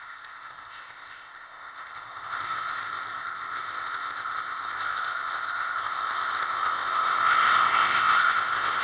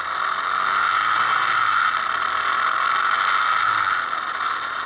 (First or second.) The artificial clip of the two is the first